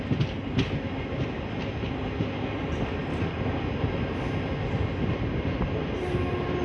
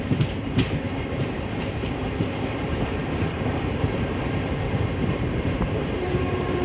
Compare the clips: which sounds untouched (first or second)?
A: first